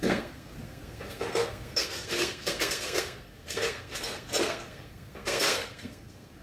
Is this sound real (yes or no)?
no